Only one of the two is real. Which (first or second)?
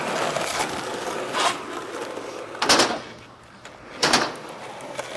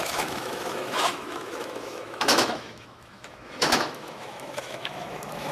first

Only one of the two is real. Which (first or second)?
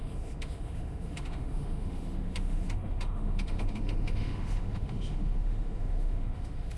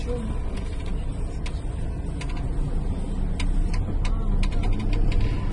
second